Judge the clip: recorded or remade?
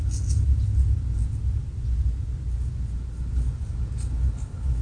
recorded